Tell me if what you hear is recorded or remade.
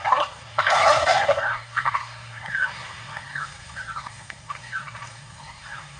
remade